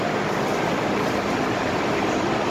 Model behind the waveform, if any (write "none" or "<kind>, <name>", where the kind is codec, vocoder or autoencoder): none